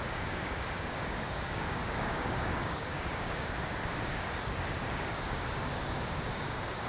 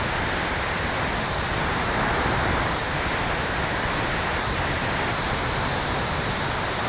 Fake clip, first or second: first